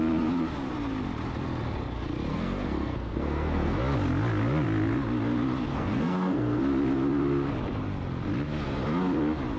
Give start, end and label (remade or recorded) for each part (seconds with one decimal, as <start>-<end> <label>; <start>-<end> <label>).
0.0-2.3 recorded; 2.3-3.8 remade; 3.8-5.7 recorded; 5.7-6.6 remade; 6.6-9.6 recorded